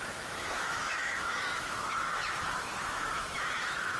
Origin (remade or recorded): remade